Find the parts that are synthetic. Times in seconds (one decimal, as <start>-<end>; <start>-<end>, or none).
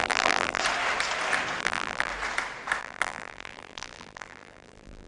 0.0-0.6; 1.6-2.1; 2.8-5.1